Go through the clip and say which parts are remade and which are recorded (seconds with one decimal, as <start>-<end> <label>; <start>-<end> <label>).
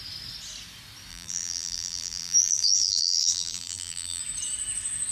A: 0.0-1.1 recorded; 1.1-4.2 remade; 4.2-5.1 recorded